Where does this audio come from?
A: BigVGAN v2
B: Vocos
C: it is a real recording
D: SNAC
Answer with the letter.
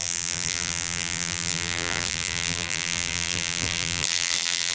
A